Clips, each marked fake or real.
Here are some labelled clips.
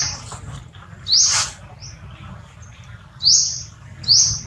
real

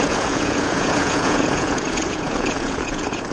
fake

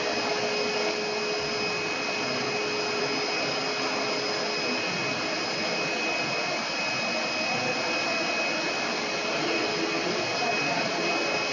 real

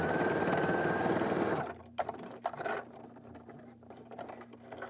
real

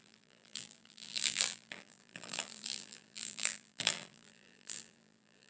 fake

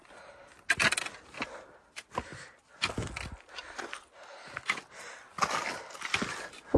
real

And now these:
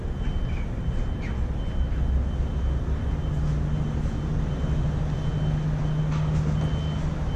real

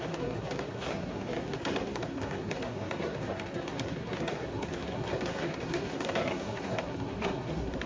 fake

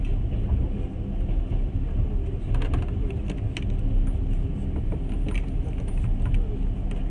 real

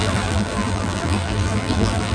fake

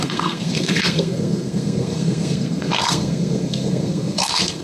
fake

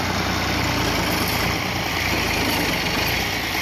real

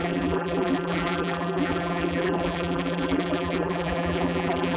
fake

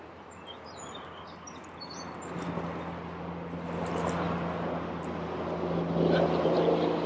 real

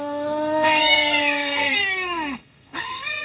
fake